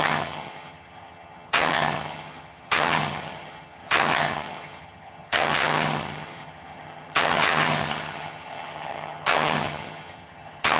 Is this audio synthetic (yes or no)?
yes